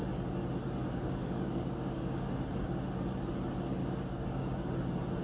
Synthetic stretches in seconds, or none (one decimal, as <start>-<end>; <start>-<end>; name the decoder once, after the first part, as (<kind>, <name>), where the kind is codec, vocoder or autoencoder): 0.8-2.3 (codec, DAC); 3.8-4.7